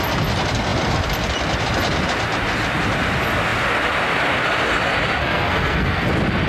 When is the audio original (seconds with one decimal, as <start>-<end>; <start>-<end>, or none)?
0.0-5.2; 6.1-6.5